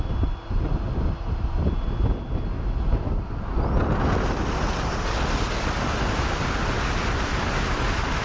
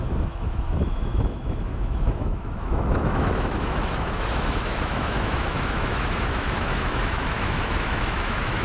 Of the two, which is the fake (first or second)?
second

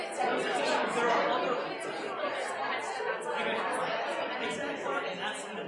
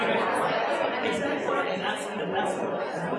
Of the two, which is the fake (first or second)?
second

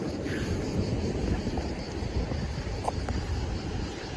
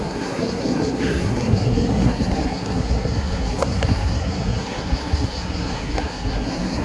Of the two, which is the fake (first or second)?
second